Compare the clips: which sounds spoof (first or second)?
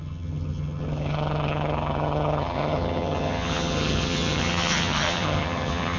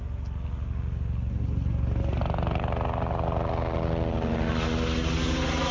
first